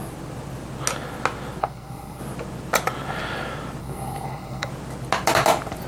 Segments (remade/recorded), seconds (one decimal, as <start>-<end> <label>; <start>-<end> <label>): 0.0-1.6 recorded; 1.6-2.2 remade; 2.2-3.8 recorded; 3.8-4.7 remade; 4.7-5.9 recorded